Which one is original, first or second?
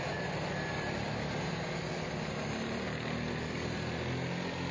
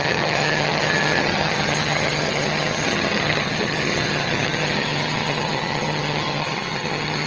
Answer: first